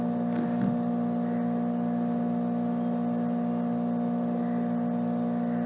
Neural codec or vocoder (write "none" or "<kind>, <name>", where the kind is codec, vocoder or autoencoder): none